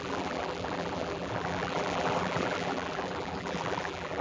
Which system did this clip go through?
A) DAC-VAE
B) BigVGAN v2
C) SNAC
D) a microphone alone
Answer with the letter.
B